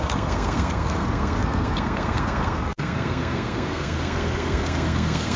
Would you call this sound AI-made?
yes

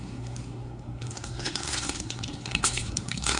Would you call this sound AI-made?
yes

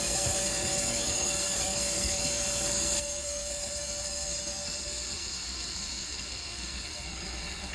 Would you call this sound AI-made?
yes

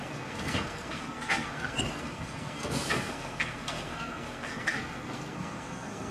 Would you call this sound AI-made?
yes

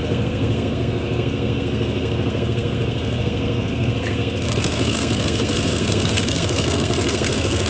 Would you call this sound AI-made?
yes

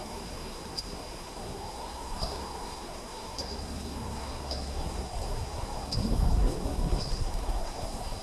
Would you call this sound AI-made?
yes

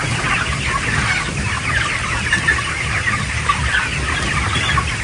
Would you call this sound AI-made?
no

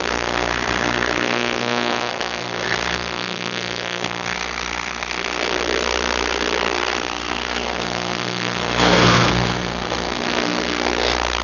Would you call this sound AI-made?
yes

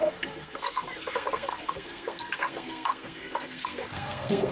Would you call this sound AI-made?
yes